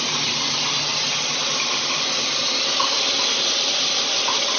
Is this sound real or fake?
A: real